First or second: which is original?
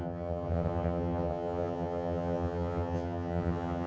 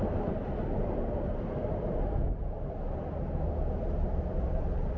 second